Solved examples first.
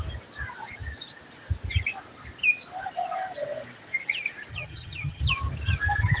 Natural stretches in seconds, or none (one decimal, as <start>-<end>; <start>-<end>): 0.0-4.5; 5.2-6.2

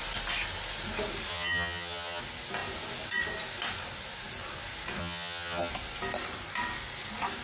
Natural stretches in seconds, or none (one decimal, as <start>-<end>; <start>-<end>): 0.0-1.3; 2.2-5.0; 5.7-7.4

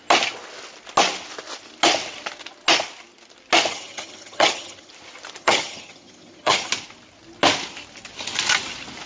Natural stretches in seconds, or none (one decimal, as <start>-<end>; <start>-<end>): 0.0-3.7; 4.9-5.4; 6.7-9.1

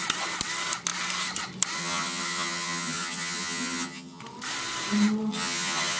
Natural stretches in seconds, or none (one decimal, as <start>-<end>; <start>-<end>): 0.0-1.8; 4.2-5.3